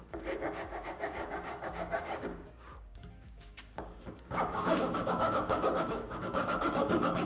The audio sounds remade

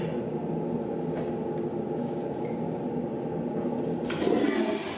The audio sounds recorded